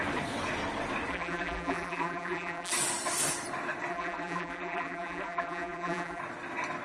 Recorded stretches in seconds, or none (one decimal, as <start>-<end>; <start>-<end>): 0.0-1.1; 2.7-3.9; 6.2-6.8